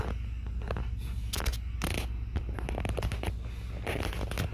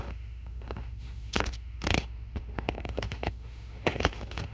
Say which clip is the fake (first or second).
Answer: second